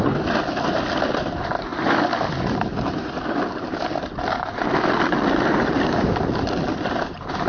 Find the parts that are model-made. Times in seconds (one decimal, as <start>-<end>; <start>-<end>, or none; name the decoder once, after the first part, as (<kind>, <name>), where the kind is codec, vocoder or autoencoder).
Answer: none